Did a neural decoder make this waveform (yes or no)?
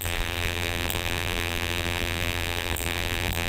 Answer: yes